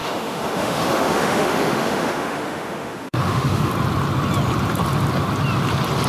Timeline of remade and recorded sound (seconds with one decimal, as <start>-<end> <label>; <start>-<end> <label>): 0.0-3.7 remade; 3.7-6.1 recorded